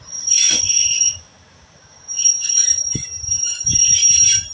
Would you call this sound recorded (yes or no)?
yes